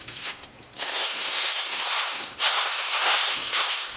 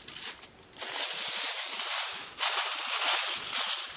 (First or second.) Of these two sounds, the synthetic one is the first